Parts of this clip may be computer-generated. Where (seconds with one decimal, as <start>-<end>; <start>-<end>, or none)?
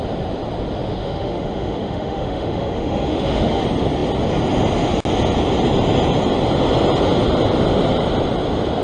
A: 1.0-3.6